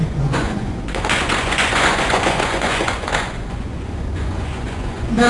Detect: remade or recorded remade